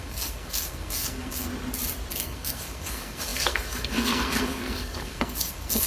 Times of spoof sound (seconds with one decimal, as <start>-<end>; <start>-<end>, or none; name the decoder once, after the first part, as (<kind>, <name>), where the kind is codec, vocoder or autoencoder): 0.0-1.5 (codec, SNAC); 2.1-5.9